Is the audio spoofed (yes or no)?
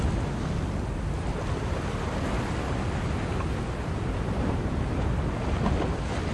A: no